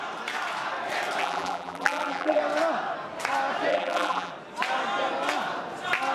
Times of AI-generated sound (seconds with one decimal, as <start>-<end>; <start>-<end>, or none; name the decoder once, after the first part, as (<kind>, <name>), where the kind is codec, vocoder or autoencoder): 1.2-2.4 (vocoder, BigVGAN v2); 3.7-4.3